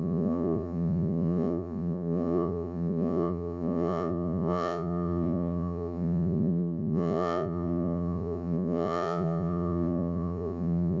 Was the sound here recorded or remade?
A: remade